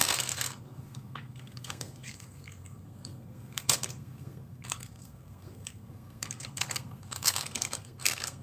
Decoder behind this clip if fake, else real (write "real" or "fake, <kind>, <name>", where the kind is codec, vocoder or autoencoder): fake, codec, SNAC